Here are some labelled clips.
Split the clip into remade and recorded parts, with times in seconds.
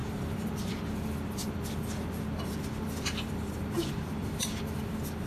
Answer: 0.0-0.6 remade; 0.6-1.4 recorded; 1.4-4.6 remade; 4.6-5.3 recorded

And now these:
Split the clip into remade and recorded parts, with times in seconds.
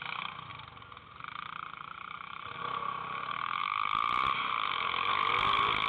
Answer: 0.0-0.5 recorded; 0.5-2.6 remade; 2.6-5.9 recorded